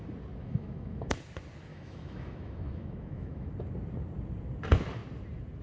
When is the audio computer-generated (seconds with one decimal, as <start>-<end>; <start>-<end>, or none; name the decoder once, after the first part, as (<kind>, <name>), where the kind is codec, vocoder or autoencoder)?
0.4-1.1 (autoencoder, DAC-VAE); 1.7-3.5